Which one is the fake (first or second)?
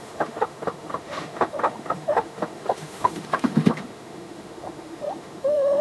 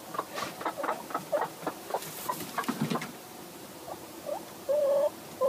first